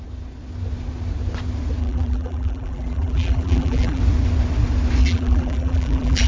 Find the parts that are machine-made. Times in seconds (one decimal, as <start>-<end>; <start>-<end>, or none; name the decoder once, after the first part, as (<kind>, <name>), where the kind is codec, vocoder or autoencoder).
1.8-4.0 (vocoder, BigVGAN v2); 5.0-6.3